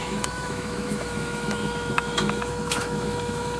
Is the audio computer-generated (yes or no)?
yes